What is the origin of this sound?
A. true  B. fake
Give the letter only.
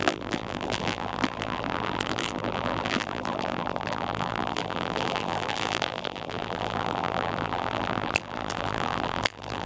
B